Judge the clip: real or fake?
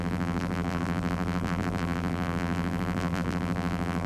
fake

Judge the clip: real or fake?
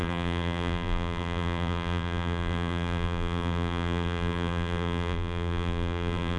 fake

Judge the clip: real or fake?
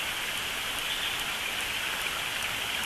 real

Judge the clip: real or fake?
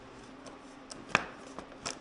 real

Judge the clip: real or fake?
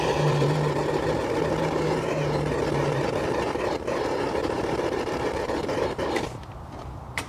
fake